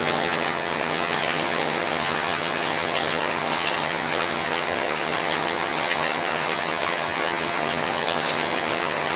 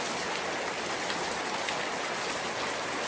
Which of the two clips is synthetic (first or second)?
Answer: first